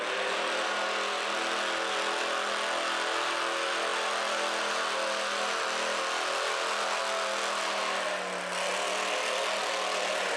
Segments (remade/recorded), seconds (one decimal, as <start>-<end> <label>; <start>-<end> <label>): 0.0-10.4 recorded